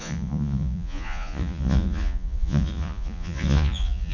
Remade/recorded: remade